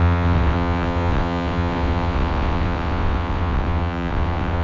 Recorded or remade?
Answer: remade